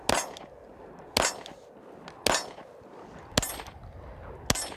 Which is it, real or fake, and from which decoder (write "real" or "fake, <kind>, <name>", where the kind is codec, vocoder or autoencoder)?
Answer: real